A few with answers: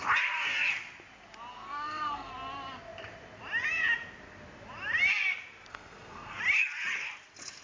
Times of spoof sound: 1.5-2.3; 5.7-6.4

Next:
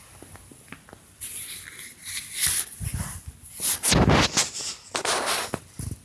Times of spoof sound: none